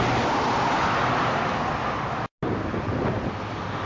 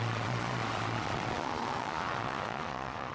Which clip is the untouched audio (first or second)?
first